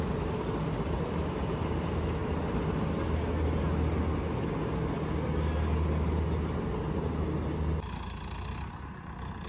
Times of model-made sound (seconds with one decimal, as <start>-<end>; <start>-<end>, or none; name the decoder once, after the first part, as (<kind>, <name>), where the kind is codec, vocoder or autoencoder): none